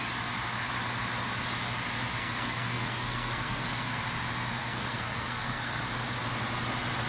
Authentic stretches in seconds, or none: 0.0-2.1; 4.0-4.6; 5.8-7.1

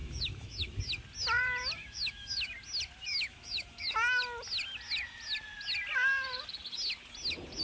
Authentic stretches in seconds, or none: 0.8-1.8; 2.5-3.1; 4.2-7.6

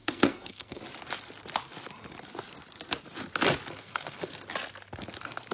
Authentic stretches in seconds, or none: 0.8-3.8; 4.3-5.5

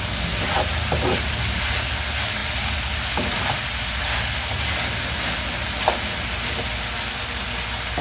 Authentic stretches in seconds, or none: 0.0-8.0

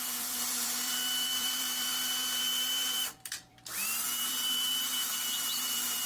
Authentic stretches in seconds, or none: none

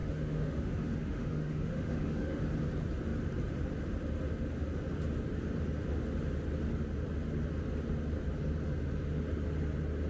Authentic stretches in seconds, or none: 2.4-10.1

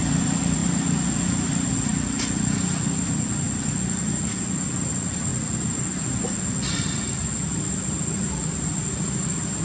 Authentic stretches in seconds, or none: 0.0-9.6